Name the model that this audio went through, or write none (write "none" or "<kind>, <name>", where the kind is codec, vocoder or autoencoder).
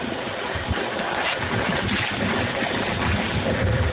none